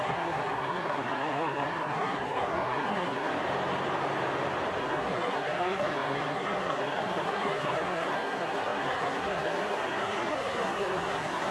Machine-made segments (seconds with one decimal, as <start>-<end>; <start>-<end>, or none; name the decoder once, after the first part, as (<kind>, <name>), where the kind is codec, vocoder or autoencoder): 0.0-3.3 (codec, SNAC); 4.8-11.5